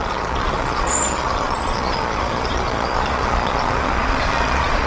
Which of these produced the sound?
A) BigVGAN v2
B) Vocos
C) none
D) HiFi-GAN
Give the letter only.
B